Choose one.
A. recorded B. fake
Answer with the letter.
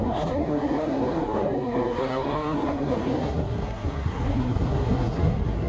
B